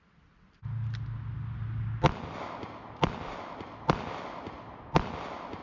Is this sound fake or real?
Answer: real